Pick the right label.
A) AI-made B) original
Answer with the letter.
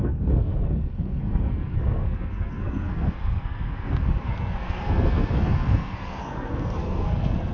A